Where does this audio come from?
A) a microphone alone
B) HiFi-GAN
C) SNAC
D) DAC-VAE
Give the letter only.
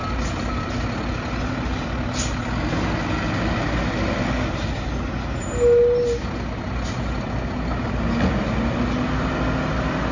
A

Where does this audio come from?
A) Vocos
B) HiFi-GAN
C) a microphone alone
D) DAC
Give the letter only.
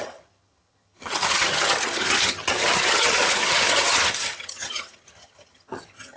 B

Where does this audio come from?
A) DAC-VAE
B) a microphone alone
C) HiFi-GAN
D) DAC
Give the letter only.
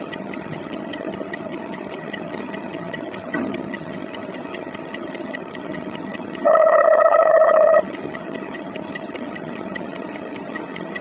C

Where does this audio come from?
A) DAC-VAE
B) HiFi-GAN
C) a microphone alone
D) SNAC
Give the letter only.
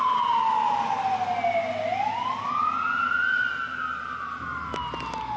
C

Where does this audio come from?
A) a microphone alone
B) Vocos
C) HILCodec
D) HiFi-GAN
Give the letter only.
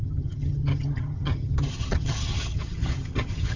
D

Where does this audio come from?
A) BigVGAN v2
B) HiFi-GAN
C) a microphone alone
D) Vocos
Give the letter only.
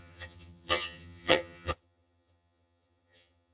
B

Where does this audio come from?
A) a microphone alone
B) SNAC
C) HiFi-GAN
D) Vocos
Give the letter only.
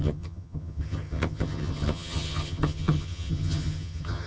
C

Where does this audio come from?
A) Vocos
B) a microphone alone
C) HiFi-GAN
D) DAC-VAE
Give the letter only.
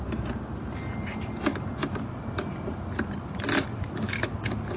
B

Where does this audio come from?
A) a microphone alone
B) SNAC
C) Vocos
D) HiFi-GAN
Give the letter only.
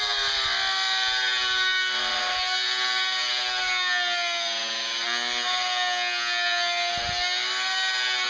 A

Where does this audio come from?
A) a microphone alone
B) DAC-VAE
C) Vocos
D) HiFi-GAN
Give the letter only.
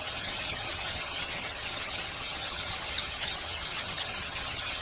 D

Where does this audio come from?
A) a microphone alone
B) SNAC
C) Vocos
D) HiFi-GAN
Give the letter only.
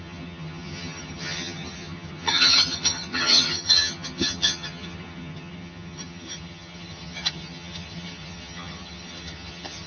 D